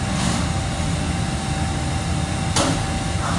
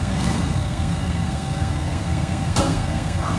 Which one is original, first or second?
first